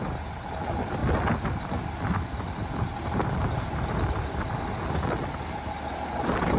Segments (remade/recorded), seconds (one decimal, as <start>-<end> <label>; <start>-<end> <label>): 0.0-6.6 recorded

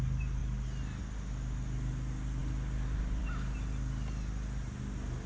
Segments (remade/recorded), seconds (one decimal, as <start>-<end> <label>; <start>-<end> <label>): 0.0-5.3 recorded